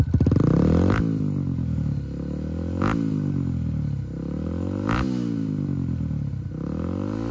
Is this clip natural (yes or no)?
yes